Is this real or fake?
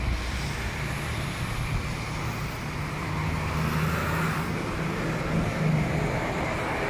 real